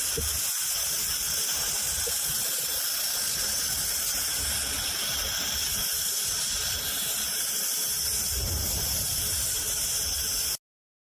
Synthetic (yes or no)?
no